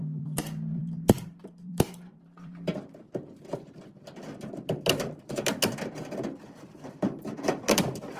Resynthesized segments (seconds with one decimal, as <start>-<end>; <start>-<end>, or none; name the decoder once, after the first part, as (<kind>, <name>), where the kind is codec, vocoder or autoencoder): 0.0-8.2 (vocoder, BigVGAN v2)